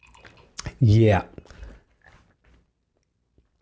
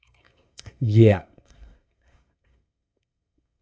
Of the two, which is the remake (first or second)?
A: second